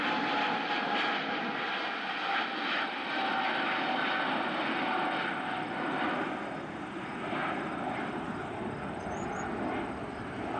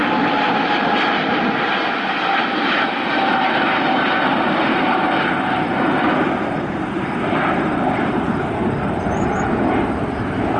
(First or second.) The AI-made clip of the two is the second